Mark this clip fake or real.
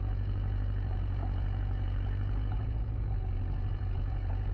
fake